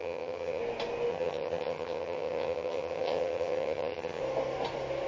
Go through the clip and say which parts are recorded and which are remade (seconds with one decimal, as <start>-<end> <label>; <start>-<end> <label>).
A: 0.0-0.6 remade; 0.6-1.1 recorded; 1.1-4.2 remade; 4.2-5.1 recorded